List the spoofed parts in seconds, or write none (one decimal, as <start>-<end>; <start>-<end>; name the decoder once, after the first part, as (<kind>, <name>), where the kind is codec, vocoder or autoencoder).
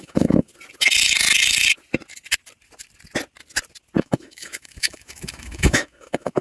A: 0.0-0.5 (autoencoder, DAC-VAE); 4.0-6.4